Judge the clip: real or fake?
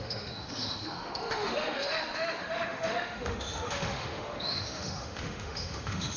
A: fake